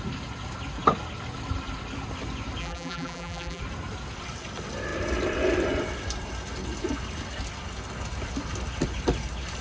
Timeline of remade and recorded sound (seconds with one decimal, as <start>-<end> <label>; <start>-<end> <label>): 0.0-2.6 recorded; 2.6-3.6 remade; 3.6-9.6 recorded